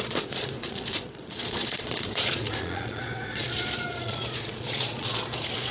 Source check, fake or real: fake